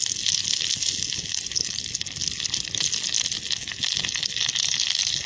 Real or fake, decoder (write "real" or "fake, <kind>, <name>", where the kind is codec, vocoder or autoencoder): real